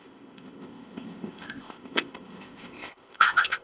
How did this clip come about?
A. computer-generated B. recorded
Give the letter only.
A